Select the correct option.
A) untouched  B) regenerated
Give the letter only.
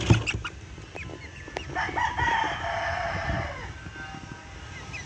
A